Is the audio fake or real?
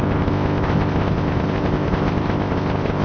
fake